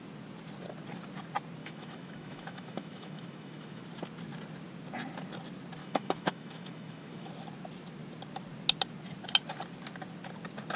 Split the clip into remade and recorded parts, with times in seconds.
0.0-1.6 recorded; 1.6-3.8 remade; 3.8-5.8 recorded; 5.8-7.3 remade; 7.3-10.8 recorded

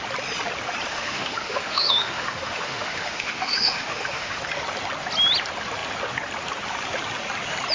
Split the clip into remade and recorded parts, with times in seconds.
0.0-0.9 recorded; 0.9-4.4 remade; 4.4-7.7 recorded

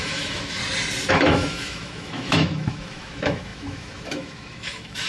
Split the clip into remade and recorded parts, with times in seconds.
0.0-0.6 remade; 0.6-1.1 recorded; 1.1-5.1 remade

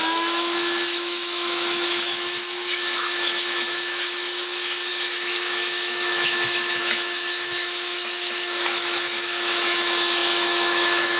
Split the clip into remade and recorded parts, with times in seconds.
0.0-11.2 remade

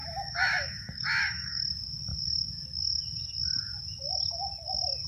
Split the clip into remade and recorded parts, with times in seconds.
0.0-1.6 remade; 1.6-5.1 recorded

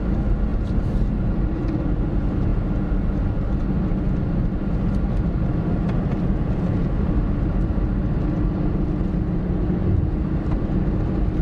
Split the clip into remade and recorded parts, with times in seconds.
0.0-11.4 recorded

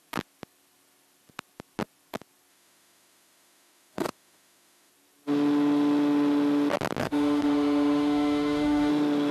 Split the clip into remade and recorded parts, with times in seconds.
0.0-2.5 recorded; 2.5-4.9 remade; 4.9-7.0 recorded; 7.0-8.9 remade; 8.9-9.3 recorded